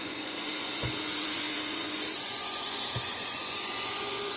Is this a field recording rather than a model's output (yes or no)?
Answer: no